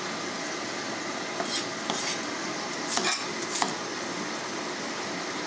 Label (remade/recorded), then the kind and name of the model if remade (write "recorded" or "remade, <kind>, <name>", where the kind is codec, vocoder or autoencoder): recorded